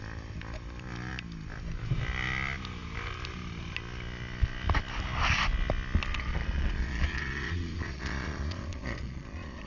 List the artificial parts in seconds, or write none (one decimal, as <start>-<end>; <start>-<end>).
6.1-9.7